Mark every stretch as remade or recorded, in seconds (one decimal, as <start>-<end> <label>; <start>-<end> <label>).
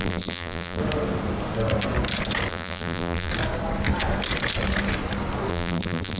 0.0-0.8 remade; 0.8-2.5 recorded; 2.5-3.3 remade; 3.3-5.5 recorded; 5.5-6.2 remade